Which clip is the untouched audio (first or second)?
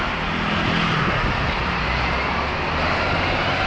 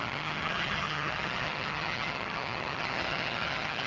first